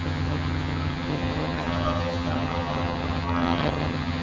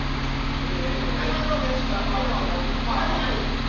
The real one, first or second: second